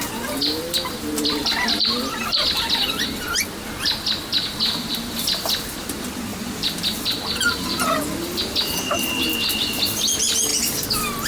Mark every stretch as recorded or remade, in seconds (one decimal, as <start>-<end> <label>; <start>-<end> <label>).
0.0-6.3 recorded; 6.3-8.4 remade; 8.4-10.5 recorded; 10.5-11.3 remade